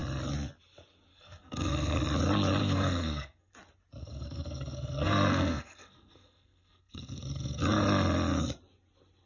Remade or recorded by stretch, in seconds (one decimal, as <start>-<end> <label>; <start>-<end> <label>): 0.0-1.1 recorded; 1.1-2.0 remade; 2.0-2.6 recorded; 2.6-3.5 remade; 3.5-4.0 recorded; 4.0-7.6 remade; 7.6-9.3 recorded